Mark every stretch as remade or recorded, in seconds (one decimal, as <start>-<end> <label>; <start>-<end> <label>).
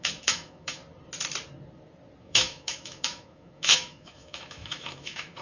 0.0-0.8 remade; 0.8-2.2 recorded; 2.2-5.4 remade